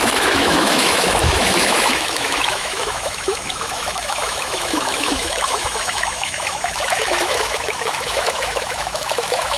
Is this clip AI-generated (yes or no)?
yes